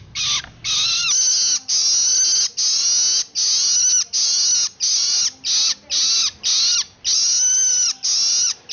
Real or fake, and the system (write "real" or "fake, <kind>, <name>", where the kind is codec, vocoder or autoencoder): real